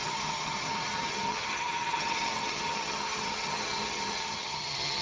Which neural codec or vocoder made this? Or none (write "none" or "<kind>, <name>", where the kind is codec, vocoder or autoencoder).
vocoder, HiFi-GAN